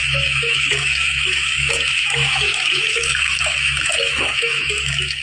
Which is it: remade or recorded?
remade